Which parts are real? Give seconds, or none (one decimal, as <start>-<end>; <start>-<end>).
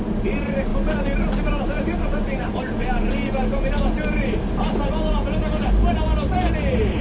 0.0-7.0